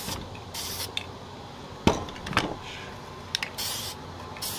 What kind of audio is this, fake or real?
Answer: real